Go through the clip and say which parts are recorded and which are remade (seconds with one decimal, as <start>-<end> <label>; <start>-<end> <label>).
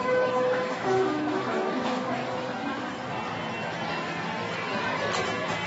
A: 0.0-2.2 remade; 2.2-5.7 recorded